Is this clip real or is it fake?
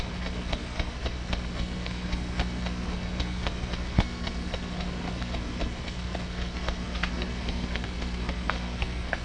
fake